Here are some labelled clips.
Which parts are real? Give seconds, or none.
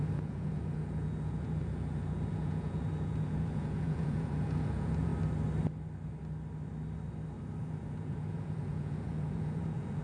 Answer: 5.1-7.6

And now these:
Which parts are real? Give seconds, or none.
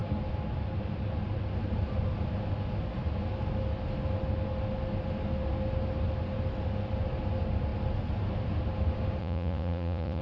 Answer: 0.0-9.2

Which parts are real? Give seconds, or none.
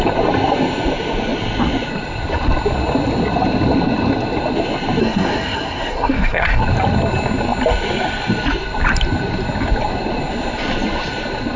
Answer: 0.0-5.0; 6.6-11.6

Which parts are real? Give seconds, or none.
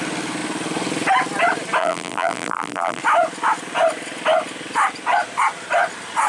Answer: 0.0-1.8; 3.0-6.3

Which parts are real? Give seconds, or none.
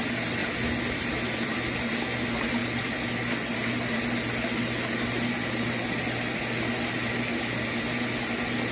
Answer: 0.0-8.7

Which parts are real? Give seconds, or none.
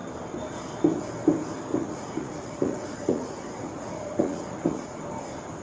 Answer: 0.0-1.7; 5.1-5.6